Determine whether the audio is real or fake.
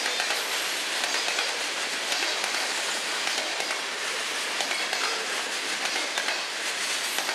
real